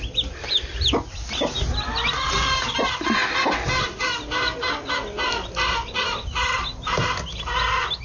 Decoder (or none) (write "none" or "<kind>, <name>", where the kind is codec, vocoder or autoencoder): none